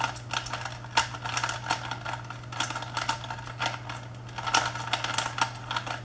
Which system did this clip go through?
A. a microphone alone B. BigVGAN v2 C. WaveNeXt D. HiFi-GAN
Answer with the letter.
A